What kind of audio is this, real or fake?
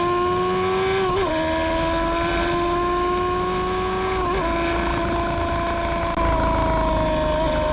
real